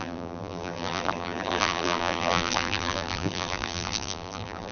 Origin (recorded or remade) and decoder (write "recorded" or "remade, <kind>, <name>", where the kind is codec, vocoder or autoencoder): remade, vocoder, BigVGAN v2